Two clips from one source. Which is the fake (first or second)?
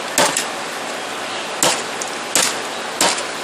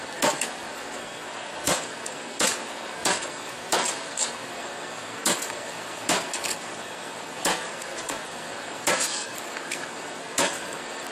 second